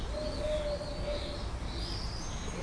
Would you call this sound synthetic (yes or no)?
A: no